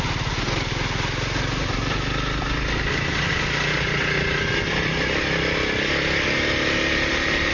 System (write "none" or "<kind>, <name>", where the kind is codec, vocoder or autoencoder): none